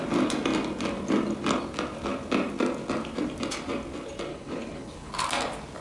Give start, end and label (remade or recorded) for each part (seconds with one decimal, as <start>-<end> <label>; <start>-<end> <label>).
0.0-4.3 recorded; 4.3-5.1 remade; 5.1-5.8 recorded